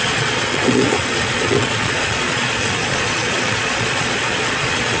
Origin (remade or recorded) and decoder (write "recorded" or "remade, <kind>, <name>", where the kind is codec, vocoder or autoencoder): remade, vocoder, Vocos